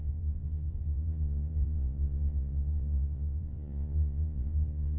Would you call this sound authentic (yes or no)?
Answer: no